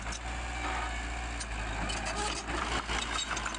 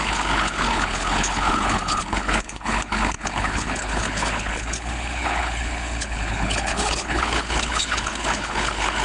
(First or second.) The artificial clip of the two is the second